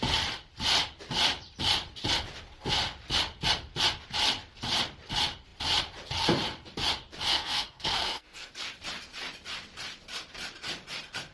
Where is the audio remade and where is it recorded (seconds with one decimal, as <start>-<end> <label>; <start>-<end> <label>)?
0.0-7.3 recorded; 7.3-8.5 remade; 8.5-11.3 recorded

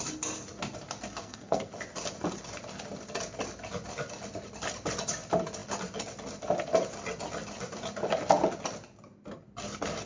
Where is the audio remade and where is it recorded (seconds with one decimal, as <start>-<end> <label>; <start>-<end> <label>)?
0.0-1.2 recorded; 1.2-1.7 remade; 1.7-10.1 recorded

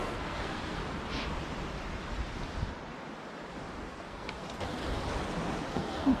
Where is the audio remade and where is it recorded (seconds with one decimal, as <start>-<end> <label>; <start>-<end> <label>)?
0.0-0.8 remade; 0.8-3.8 recorded; 3.8-4.8 remade; 4.8-5.7 recorded; 5.7-6.2 remade

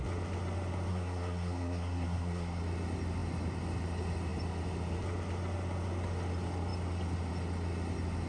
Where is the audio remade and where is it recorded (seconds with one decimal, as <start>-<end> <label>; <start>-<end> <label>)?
0.0-0.9 recorded; 0.9-2.6 remade; 2.6-8.3 recorded

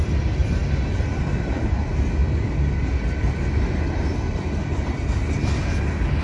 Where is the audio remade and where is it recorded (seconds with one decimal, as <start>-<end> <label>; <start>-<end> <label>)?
0.0-6.2 recorded